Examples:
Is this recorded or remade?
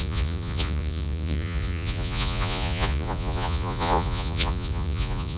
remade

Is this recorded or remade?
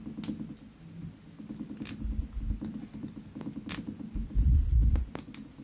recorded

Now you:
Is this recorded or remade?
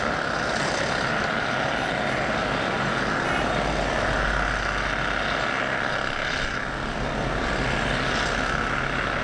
recorded